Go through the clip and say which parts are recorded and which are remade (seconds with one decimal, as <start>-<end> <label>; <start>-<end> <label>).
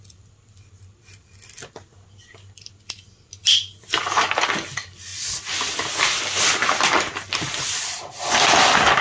0.0-9.0 recorded